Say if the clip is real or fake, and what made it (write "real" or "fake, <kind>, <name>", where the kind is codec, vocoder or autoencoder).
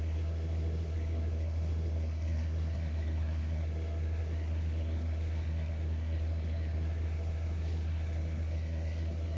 fake, codec, SNAC